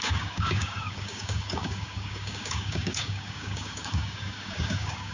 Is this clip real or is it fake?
fake